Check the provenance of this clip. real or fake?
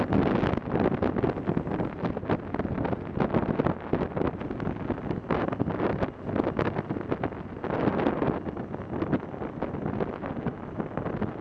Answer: real